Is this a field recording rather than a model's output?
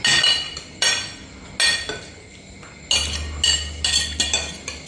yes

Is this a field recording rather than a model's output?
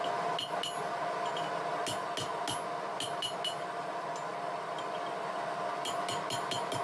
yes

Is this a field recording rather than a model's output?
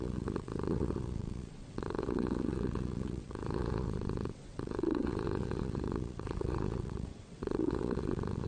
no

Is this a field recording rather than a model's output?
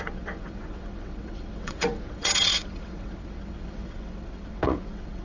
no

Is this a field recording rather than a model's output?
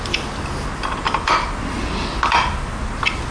yes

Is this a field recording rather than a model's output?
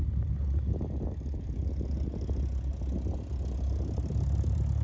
yes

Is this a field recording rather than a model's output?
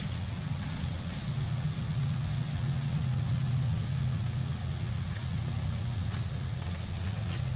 no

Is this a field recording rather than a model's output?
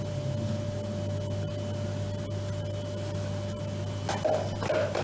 yes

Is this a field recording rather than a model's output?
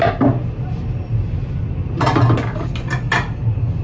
yes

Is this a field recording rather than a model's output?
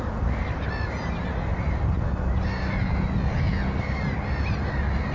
yes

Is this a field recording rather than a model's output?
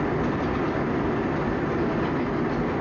yes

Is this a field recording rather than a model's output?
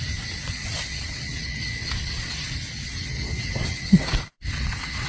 no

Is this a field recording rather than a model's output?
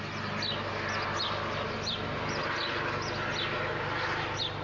yes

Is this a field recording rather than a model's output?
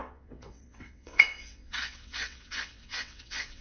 no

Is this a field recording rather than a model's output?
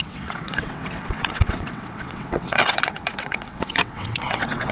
no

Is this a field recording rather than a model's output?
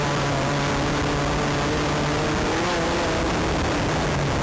yes